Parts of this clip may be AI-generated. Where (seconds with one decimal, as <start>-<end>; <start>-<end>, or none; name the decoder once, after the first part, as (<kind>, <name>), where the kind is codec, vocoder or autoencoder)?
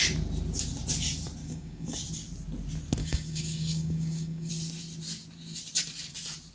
1.4-2.0 (codec, DAC); 3.0-4.5